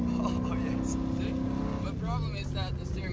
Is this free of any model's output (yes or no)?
yes